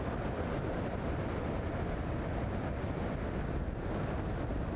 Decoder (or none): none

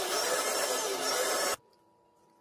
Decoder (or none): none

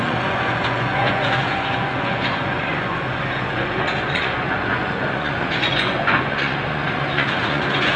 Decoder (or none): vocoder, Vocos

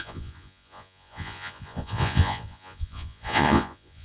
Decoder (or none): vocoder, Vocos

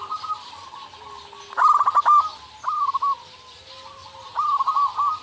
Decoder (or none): none